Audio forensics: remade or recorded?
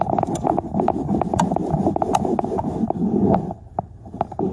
recorded